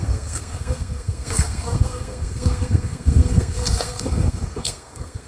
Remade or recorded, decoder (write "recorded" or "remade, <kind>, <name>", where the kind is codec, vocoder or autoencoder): remade, codec, SNAC